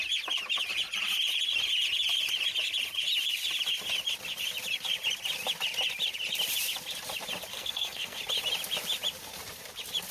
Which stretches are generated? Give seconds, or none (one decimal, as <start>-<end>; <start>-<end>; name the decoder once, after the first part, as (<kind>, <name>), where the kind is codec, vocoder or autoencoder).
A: 7.5-8.2 (codec, SNAC)